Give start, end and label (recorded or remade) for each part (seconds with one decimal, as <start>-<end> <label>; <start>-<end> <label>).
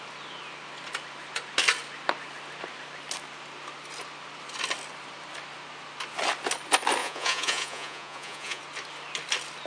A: 0.0-7.0 recorded; 7.0-8.6 remade; 8.6-9.7 recorded